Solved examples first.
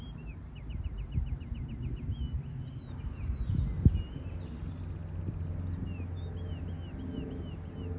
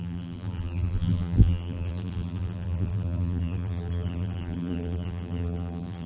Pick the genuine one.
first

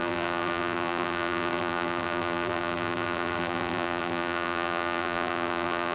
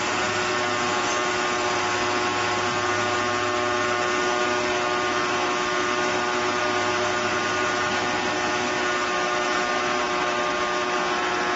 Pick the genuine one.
second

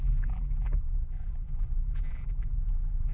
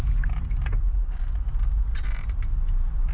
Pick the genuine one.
second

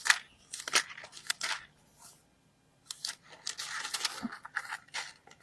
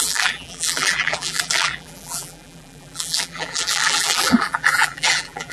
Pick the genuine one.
first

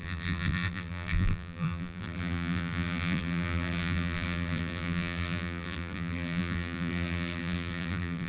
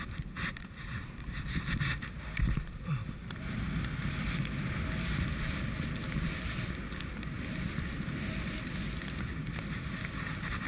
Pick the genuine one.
second